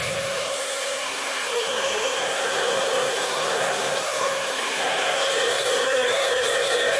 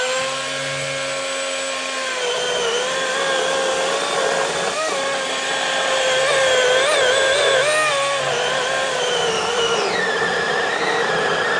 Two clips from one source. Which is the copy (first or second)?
first